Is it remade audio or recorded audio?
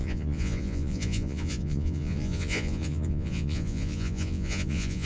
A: remade